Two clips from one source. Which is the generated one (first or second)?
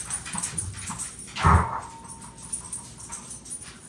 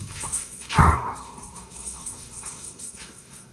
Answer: second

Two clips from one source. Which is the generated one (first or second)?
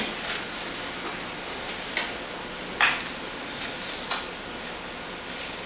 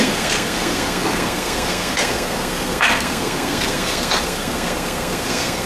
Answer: second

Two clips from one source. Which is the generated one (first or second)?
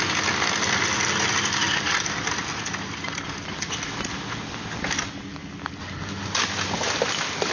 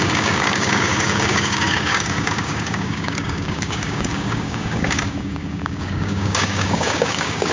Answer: second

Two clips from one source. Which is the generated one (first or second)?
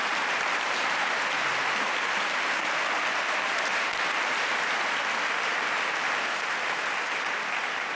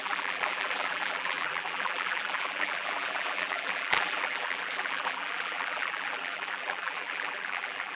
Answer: second